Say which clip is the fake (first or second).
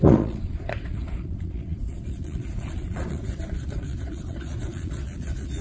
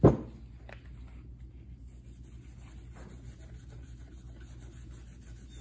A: first